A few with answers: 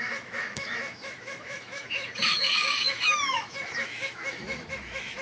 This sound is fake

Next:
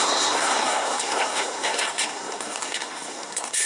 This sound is fake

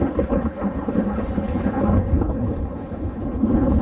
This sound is fake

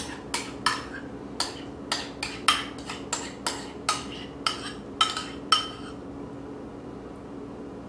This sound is real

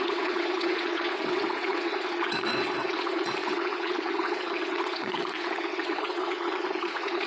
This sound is fake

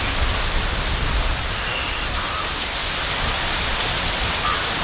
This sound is real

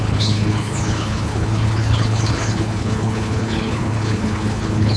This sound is fake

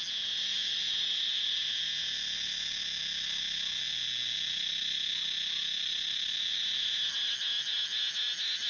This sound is real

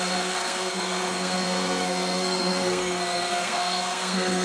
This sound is fake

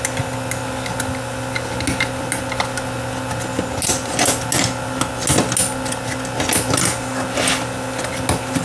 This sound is real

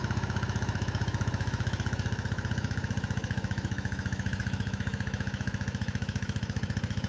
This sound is fake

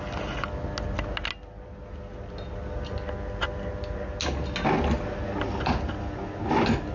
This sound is real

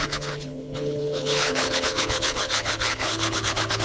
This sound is fake